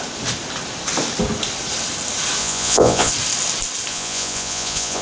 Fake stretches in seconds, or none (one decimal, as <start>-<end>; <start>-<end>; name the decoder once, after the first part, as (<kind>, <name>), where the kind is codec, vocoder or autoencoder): 2.4-3.1 (vocoder, Vocos); 3.9-5.0